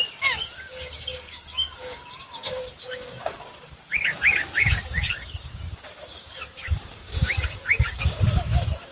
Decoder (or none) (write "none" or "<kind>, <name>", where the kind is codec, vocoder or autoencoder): codec, DAC